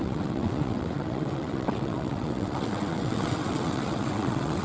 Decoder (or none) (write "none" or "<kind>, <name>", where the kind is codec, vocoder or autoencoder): vocoder, WaveNeXt